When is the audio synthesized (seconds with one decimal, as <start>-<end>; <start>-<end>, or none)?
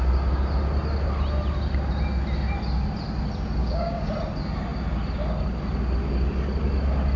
3.6-4.1